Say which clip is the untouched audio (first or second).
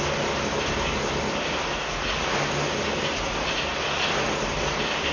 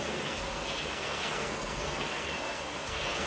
first